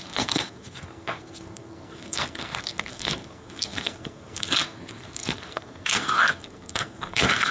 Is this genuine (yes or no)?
no